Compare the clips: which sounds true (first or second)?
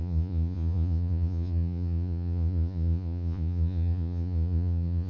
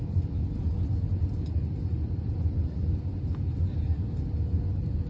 second